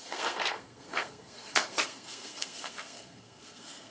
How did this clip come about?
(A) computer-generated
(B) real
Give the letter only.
A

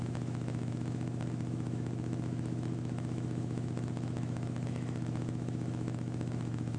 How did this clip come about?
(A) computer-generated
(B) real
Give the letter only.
A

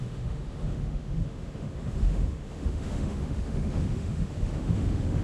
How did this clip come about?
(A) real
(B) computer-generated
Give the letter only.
B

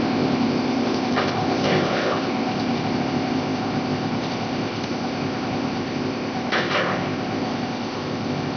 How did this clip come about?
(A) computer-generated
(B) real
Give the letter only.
A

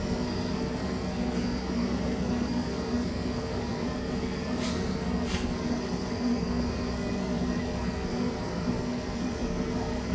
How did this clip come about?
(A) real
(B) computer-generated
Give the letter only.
B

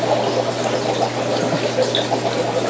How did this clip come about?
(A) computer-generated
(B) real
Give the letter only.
B